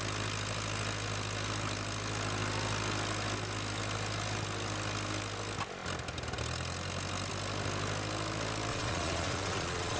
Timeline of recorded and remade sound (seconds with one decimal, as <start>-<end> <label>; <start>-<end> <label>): 0.0-8.7 recorded; 8.7-10.0 remade